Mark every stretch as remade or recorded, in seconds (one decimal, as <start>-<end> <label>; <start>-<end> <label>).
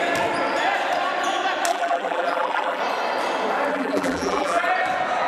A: 0.0-1.7 recorded; 1.7-2.8 remade; 2.8-3.7 recorded; 3.7-4.7 remade; 4.7-5.3 recorded